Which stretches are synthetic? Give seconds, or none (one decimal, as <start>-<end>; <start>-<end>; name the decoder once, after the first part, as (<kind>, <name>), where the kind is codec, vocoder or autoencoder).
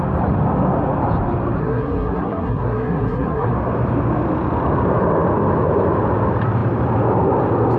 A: 1.6-3.5 (codec, SNAC)